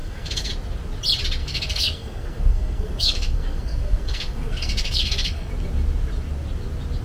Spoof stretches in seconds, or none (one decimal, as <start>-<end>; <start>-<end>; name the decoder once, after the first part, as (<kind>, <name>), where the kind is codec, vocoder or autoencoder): 0.0-0.5 (codec, SNAC); 1.4-5.5